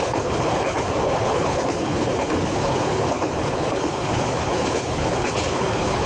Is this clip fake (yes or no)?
yes